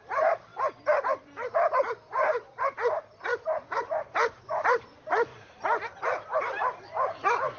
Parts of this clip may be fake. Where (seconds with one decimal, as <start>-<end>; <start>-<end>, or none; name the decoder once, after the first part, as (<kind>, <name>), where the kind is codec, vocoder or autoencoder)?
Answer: 0.0-7.6 (vocoder, BigVGAN v2)